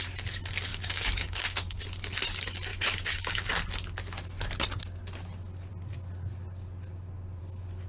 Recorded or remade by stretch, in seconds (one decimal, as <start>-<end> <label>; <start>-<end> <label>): 0.0-0.7 recorded; 0.7-1.8 remade; 1.8-2.7 recorded; 2.7-3.5 remade; 3.5-7.9 recorded